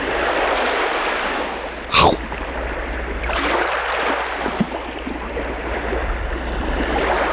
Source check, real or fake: real